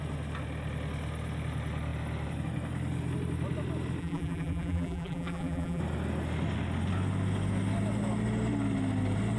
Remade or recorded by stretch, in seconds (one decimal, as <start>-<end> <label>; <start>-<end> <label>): 0.0-4.0 recorded; 4.0-5.8 remade; 5.8-9.4 recorded